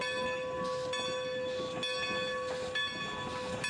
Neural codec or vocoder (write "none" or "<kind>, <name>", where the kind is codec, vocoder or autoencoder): none